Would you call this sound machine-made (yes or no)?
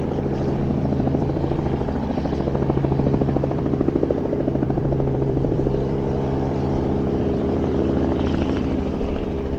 yes